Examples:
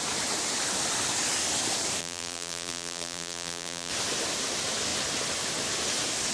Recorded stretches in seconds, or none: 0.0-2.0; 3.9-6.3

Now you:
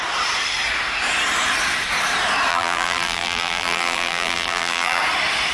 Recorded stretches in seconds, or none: 0.0-2.5; 5.0-5.5